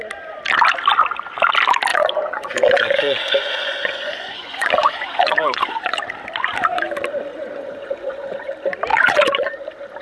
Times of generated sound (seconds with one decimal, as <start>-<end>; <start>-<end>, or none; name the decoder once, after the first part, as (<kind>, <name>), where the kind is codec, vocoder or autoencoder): 1.9-6.0 (vocoder, Vocos); 7.3-8.5; 8.9-9.5